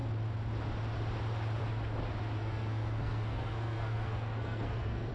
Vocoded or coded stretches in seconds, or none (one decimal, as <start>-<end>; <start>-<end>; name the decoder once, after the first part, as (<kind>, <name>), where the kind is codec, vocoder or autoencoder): 2.4-5.1 (codec, SNAC)